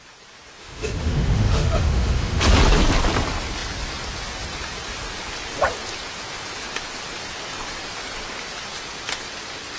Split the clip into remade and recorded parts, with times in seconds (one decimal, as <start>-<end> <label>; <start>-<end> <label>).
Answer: 0.0-0.6 recorded; 0.6-2.4 remade; 2.4-9.8 recorded